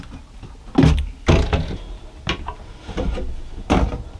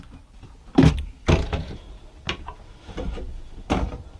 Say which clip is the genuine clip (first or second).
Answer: first